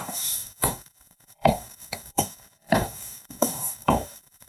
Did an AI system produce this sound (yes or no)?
yes